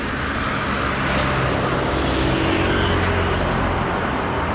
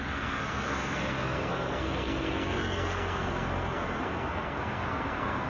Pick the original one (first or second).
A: first